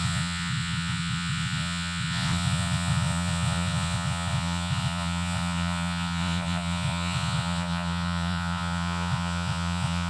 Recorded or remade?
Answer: remade